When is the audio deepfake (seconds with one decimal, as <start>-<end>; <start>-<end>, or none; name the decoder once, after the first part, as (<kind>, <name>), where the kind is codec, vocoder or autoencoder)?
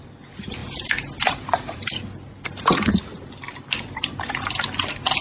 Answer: none